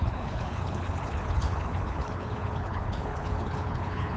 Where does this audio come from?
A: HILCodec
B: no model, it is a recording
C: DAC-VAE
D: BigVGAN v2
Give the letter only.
A